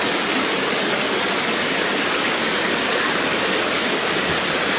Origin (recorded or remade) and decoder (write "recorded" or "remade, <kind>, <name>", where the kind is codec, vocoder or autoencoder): recorded